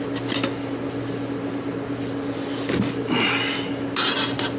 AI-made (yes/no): no